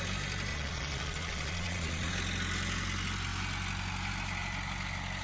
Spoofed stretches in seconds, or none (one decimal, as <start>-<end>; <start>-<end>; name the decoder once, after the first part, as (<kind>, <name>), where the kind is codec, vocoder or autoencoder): 0.5-2.1 (vocoder, Vocos)